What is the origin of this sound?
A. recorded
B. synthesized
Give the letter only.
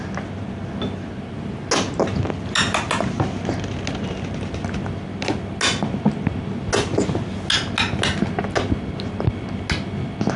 A